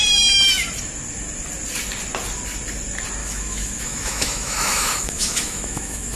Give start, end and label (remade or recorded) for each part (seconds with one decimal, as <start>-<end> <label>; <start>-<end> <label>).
0.0-3.2 recorded; 3.2-6.2 remade